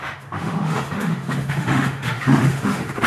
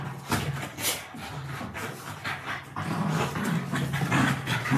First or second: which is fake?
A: first